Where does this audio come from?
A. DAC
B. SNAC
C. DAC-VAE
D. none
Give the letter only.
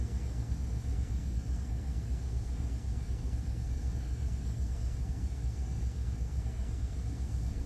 B